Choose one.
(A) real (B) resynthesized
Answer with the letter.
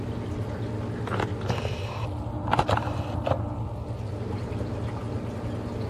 A